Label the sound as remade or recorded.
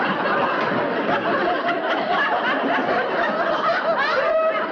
recorded